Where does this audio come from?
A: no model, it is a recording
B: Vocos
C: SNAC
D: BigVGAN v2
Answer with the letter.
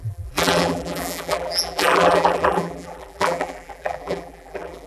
D